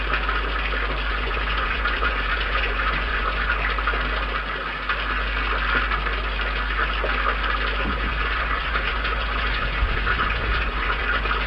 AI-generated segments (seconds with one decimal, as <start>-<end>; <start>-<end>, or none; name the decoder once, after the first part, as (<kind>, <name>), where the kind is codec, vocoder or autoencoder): 1.1-3.5 (vocoder, Vocos); 7.9-11.0